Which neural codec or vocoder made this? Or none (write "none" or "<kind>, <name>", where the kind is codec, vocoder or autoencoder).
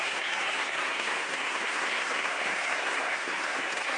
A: codec, SNAC